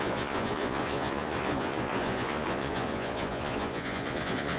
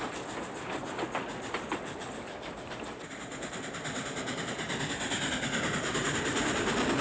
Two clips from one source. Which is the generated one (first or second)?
first